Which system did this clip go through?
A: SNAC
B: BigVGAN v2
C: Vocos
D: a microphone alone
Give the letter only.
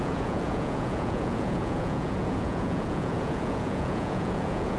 C